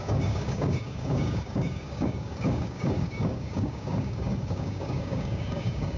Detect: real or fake fake